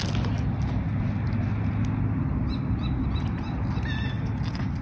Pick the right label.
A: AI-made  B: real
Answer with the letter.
B